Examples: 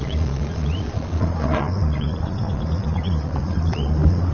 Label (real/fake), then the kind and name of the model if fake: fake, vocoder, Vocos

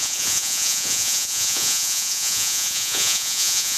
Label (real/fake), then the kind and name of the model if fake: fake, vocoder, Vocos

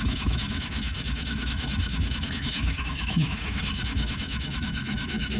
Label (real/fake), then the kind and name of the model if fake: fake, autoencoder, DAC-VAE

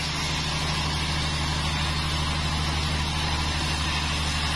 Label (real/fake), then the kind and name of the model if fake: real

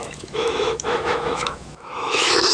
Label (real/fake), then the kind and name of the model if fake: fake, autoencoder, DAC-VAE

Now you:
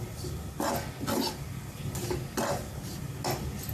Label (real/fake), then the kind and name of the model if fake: real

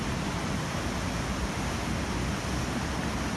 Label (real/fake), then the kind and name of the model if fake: real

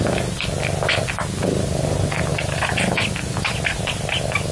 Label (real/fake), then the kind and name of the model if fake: real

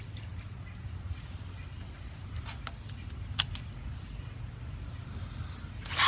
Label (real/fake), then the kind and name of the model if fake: real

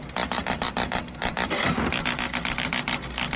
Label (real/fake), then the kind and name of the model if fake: real